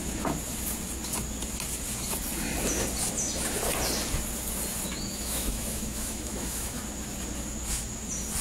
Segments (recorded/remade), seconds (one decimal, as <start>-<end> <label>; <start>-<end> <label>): 0.0-5.1 recorded; 5.1-6.8 remade; 6.8-8.4 recorded

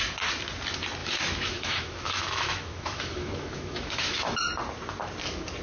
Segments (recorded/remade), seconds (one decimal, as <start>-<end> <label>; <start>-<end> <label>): 0.0-1.0 recorded; 1.0-4.4 remade; 4.4-5.6 recorded